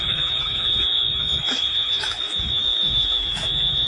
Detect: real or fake fake